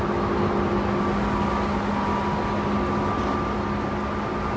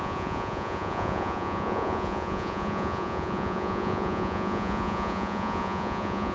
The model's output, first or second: second